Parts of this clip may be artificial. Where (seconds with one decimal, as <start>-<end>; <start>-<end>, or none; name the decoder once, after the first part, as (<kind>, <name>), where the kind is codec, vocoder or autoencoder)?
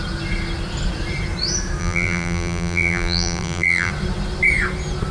1.8-3.9 (vocoder, BigVGAN v2)